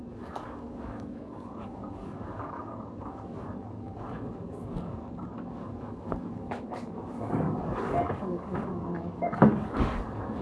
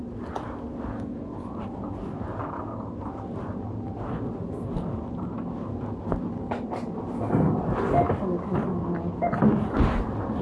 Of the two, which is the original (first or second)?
second